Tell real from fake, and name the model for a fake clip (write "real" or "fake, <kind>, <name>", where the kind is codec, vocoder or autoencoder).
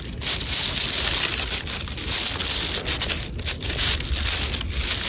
real